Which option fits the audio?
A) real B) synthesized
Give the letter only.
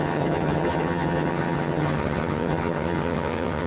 B